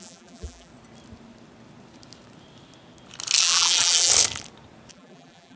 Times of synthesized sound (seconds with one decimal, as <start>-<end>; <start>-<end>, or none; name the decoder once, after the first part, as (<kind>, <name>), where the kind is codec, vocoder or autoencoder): 0.0-0.7 (vocoder, BigVGAN v2); 3.4-4.1; 4.9-5.6